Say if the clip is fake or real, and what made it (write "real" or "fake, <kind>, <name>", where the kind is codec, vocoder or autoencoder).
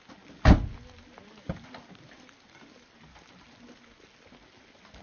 real